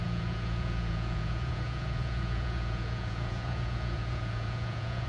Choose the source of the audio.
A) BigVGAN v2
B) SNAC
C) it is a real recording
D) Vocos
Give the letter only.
D